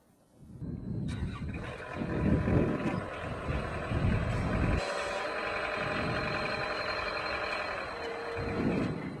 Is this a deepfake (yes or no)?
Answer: no